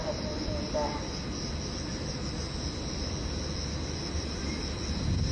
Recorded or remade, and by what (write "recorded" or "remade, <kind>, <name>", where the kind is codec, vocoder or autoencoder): recorded